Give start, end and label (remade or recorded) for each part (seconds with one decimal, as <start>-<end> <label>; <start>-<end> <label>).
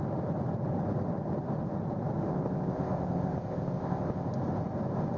0.0-2.3 recorded; 2.3-4.3 remade; 4.3-5.2 recorded